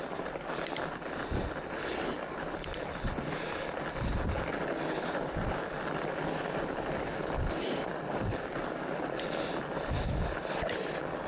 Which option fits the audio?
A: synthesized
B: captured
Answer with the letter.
B